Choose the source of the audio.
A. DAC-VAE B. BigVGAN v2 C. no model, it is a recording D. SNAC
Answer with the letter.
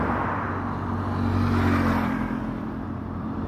C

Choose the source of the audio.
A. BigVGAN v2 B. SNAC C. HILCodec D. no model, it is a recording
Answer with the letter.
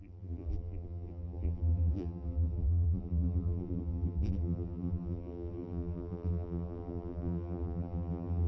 A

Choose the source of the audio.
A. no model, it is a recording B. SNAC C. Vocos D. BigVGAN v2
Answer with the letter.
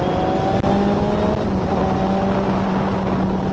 A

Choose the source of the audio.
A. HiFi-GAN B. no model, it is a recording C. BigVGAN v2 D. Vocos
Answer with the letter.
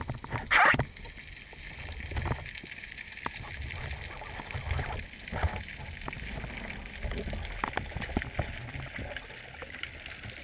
B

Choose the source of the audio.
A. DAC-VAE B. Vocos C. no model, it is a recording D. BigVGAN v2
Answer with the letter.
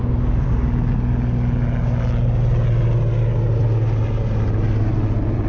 C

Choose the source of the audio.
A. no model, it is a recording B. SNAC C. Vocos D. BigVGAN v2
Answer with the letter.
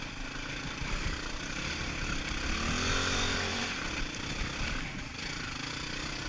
A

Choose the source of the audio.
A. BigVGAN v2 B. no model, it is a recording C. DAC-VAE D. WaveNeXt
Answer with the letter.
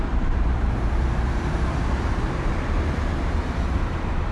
A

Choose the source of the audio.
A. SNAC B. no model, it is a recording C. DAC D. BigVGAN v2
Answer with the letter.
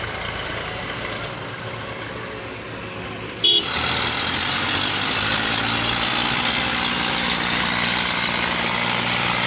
B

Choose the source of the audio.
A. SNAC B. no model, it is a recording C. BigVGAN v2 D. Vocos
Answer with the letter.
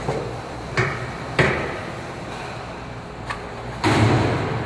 C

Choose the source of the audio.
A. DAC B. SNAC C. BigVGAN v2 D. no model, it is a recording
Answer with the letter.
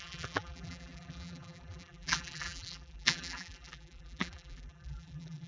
C